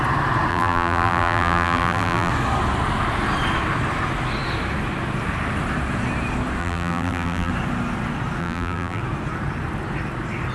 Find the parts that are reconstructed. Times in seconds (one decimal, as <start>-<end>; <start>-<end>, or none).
0.5-2.3; 6.6-7.5; 8.4-9.0